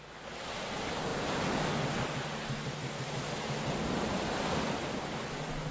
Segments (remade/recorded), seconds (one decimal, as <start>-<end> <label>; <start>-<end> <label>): 0.0-5.7 recorded